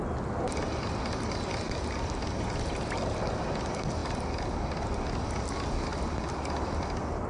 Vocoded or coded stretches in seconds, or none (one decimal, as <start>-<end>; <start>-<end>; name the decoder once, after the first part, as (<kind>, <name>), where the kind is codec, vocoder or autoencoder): 5.9-7.3 (vocoder, BigVGAN v2)